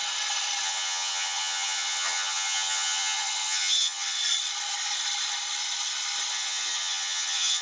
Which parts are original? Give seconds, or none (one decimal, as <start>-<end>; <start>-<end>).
0.0-0.6; 4.2-6.3